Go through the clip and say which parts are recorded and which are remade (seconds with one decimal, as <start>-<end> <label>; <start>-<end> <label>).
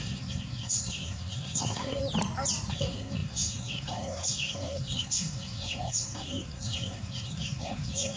0.0-2.0 remade; 2.0-2.7 recorded; 2.7-8.2 remade